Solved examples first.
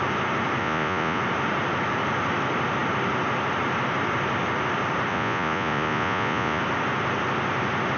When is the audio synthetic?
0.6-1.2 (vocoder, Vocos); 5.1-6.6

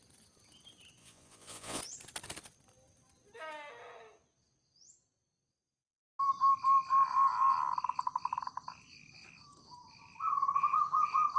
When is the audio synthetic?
1.0-1.8 (vocoder, Vocos)

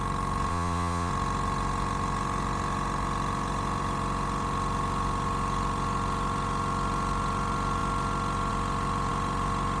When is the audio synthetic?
0.5-1.1 (vocoder, Vocos)

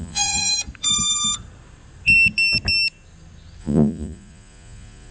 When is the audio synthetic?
0.0-0.5 (vocoder, Vocos); 3.6-5.1